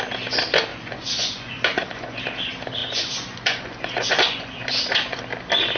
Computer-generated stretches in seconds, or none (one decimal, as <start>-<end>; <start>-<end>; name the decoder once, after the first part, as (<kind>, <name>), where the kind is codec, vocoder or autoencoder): 0.7-2.2 (vocoder, Vocos); 2.8-5.2